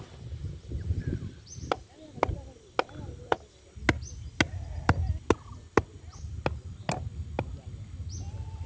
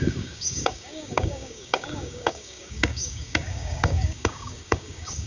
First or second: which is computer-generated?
second